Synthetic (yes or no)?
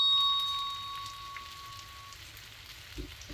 no